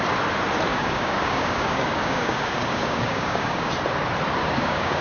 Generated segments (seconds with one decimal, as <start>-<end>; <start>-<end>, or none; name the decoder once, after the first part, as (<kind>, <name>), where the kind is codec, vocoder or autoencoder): 0.7-3.7 (codec, DAC); 4.4-5.0